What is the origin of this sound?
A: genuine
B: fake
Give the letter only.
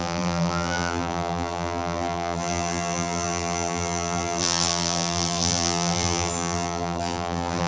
B